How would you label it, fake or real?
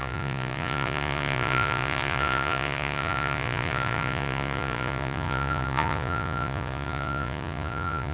fake